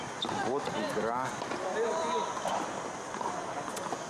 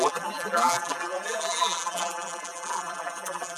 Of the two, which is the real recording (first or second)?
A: first